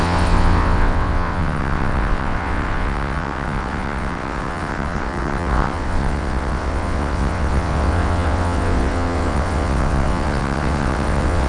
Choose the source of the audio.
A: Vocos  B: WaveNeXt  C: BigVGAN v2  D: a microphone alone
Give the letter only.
B